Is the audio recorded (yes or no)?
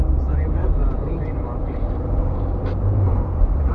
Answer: no